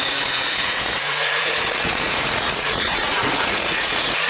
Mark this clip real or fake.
fake